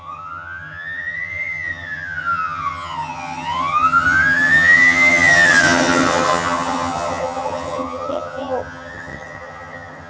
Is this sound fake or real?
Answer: fake